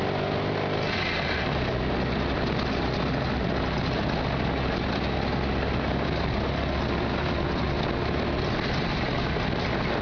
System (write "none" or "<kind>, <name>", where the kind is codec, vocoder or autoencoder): none